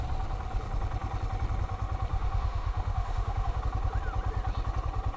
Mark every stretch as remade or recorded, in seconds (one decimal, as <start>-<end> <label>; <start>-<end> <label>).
0.0-2.1 recorded; 2.1-3.6 remade; 3.6-5.2 recorded